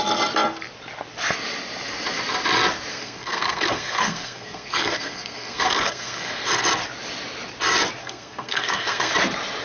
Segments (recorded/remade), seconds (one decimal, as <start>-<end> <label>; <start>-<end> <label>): 0.0-2.9 recorded; 2.9-6.4 remade; 6.4-8.0 recorded; 8.0-9.1 remade; 9.1-9.6 recorded